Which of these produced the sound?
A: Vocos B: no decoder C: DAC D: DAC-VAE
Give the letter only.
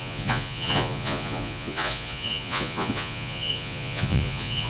A